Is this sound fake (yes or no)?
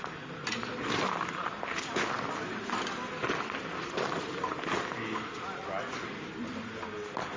no